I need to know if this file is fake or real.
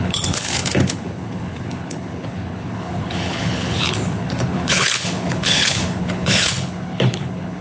fake